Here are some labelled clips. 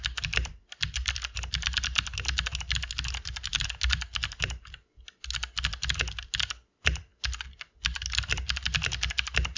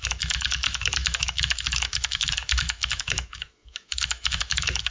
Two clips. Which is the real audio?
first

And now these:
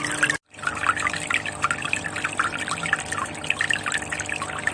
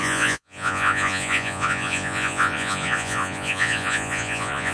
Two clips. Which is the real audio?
first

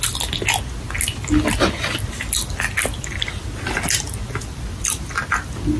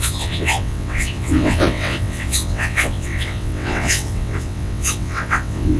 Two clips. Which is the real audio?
first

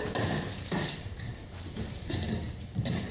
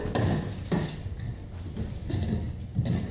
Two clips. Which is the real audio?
second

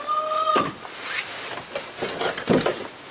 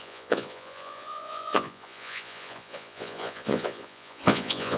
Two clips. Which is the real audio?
first